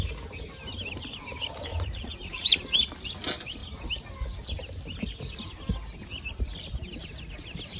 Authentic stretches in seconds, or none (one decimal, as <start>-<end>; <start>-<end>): 0.0-1.7; 2.5-7.8